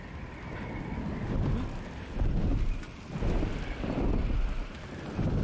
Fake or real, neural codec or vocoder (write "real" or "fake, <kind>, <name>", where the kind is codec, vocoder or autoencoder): real